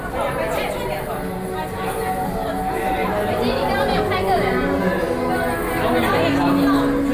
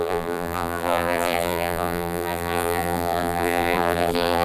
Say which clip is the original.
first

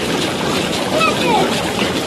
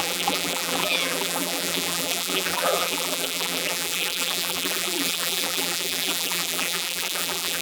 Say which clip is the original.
first